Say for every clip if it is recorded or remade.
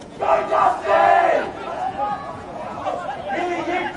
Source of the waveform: remade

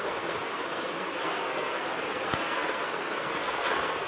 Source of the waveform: remade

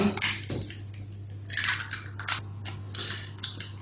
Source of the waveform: recorded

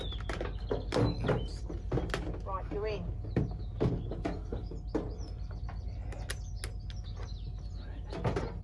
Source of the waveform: recorded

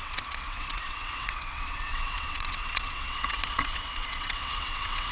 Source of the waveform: remade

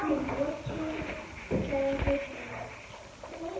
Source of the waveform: recorded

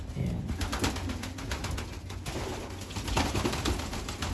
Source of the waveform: recorded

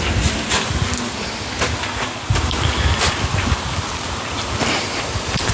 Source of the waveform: recorded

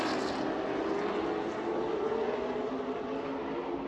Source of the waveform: recorded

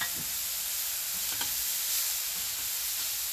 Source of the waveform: recorded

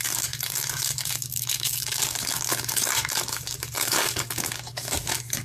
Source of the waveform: remade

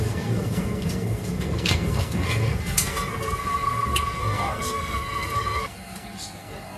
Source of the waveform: remade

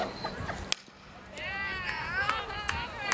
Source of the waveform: recorded